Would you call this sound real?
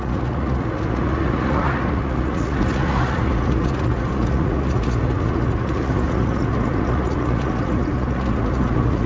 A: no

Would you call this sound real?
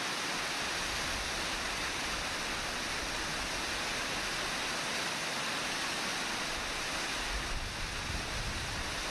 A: yes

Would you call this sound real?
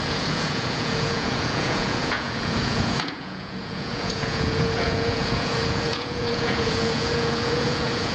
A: no